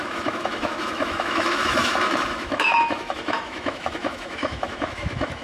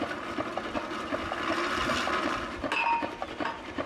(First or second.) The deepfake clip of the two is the first